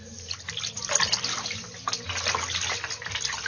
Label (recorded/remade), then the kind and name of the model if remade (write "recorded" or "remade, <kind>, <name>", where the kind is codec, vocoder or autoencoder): recorded